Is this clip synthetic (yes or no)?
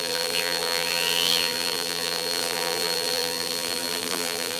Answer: yes